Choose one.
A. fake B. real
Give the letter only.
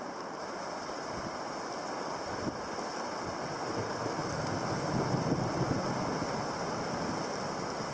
B